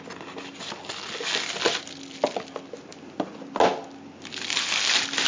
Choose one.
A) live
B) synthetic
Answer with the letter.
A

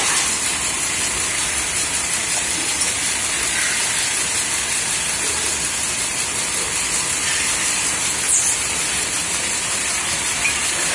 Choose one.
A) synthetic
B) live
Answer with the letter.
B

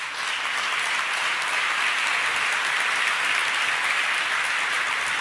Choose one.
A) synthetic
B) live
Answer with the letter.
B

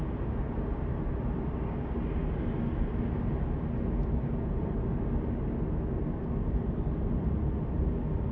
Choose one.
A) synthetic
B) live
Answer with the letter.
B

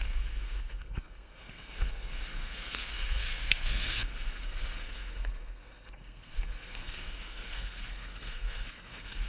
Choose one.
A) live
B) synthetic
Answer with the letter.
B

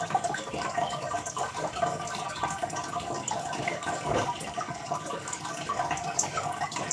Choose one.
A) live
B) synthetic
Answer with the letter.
B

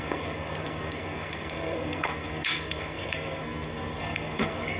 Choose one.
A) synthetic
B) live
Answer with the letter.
A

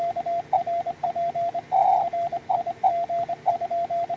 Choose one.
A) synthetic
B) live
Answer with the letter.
B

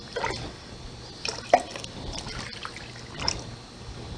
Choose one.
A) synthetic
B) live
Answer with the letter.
B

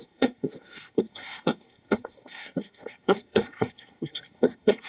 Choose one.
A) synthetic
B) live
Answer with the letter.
A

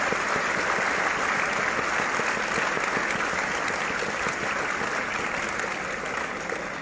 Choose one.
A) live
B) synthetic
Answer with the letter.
A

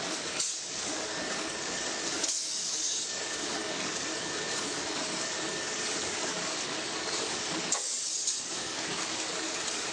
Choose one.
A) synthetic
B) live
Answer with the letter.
A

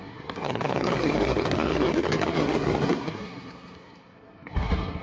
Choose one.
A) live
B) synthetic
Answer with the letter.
B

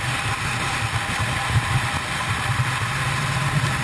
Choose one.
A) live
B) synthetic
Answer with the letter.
B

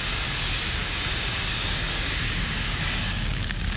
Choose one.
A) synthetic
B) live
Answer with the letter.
A